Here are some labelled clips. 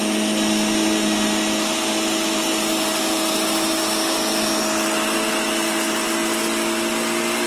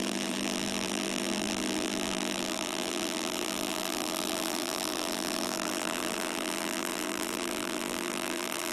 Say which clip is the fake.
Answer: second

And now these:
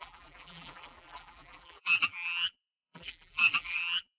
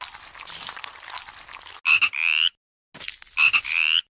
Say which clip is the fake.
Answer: first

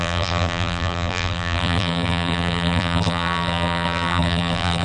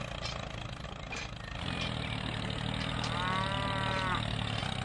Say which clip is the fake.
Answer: first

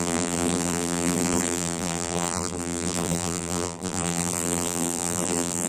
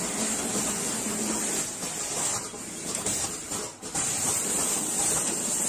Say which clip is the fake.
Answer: first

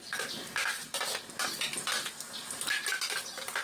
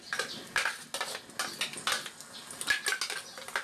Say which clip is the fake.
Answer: first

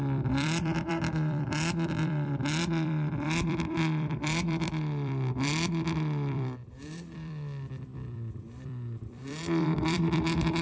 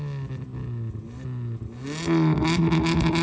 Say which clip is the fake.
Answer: first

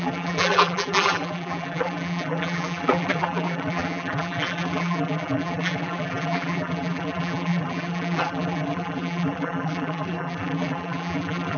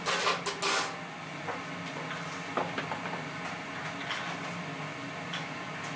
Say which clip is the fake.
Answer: first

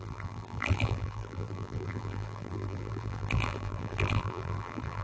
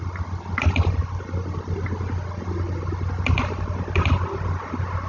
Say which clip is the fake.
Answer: first